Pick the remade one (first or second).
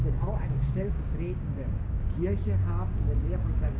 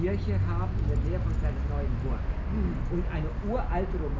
first